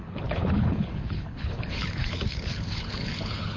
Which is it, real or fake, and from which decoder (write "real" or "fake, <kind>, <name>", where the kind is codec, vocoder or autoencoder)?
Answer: fake, codec, HILCodec